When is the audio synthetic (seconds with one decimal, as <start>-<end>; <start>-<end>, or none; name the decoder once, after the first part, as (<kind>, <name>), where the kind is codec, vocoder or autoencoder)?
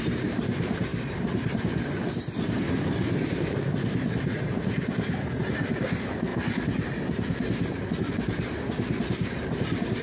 0.0-0.9 (vocoder, BigVGAN v2); 1.5-6.3; 8.1-10.0